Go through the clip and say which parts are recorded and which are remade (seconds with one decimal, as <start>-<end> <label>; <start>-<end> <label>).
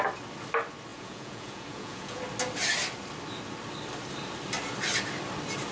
0.0-0.9 recorded; 0.9-2.2 remade; 2.2-5.7 recorded